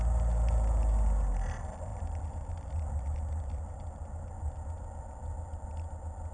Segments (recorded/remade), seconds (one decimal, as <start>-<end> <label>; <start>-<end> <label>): 0.0-6.3 recorded